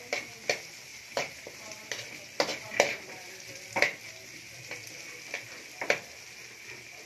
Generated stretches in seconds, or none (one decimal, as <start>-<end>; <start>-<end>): 0.9-1.9; 2.5-3.3